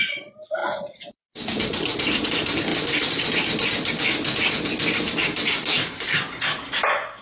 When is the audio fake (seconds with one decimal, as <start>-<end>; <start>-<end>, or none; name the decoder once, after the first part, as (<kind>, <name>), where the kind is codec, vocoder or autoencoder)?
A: 2.7-3.2 (vocoder, BigVGAN v2)